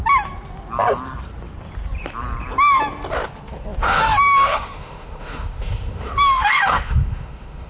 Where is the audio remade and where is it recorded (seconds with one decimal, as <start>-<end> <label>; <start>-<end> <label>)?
0.0-3.8 recorded; 3.8-7.7 remade